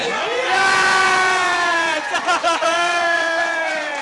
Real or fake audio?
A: fake